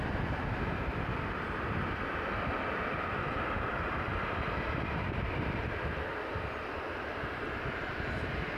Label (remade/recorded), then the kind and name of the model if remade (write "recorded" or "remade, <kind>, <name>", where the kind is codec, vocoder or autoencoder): remade, vocoder, BigVGAN v2